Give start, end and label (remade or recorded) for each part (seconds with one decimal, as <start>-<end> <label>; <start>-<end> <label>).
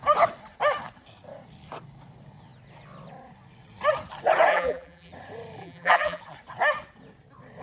0.0-4.5 recorded; 4.5-5.1 remade; 5.1-5.6 recorded; 5.6-6.2 remade; 6.2-7.6 recorded